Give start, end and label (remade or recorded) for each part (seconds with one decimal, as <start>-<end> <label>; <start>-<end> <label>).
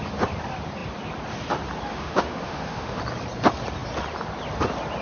0.0-1.9 recorded; 1.9-3.0 remade; 3.0-5.0 recorded